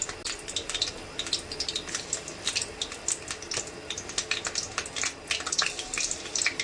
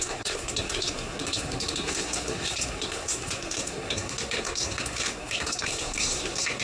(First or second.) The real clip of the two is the first